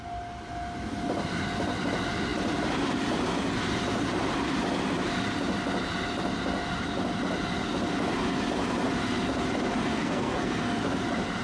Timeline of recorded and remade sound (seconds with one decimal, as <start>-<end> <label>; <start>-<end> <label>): 0.0-9.9 recorded; 9.9-10.8 remade; 10.8-11.4 recorded